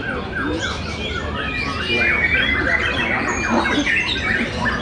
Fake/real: real